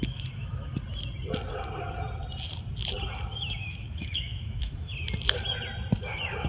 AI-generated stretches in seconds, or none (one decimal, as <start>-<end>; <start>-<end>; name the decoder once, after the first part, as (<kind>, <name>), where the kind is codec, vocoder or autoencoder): 0.0-0.7 (autoencoder, DAC-VAE); 3.3-4.9